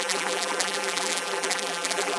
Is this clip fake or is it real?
fake